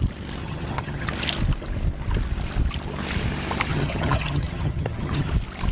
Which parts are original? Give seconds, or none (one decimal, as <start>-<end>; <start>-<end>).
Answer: 0.0-0.4; 1.1-3.7; 5.3-5.7